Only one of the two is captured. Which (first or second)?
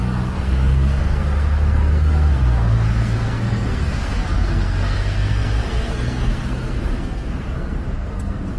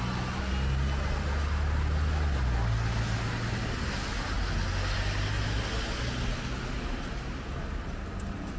second